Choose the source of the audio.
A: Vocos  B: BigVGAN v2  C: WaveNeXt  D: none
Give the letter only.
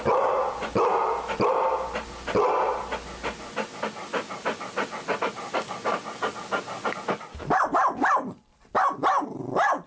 D